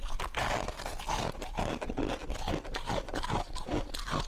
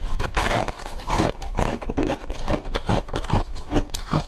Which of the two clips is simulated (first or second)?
second